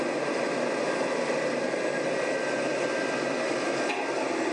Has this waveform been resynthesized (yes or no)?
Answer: no